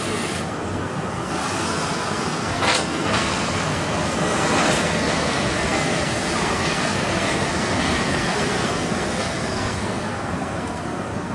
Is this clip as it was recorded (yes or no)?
no